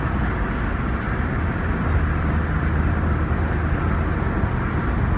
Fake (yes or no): no